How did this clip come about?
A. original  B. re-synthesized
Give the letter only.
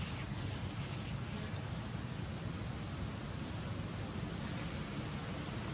A